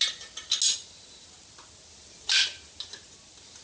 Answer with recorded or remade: recorded